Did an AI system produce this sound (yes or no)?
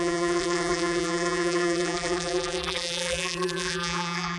yes